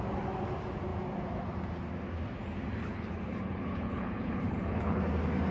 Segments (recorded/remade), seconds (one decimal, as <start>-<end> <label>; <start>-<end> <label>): 0.0-2.8 recorded; 2.8-5.0 remade; 5.0-5.5 recorded